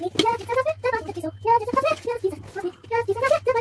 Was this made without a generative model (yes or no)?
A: yes